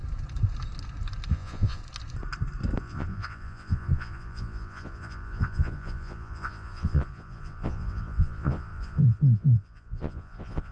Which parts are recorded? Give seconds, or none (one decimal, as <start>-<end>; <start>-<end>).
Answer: 0.0-1.3; 1.8-2.8